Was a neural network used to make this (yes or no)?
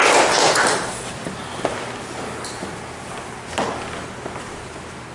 no